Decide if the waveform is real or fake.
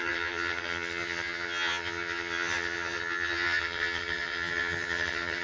fake